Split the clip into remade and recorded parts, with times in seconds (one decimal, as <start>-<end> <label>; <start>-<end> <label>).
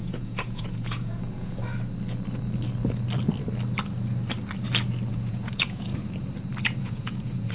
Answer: 0.0-1.7 remade; 1.7-5.1 recorded; 5.1-5.9 remade; 5.9-6.8 recorded; 6.8-7.5 remade